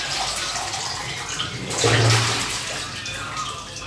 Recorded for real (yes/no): yes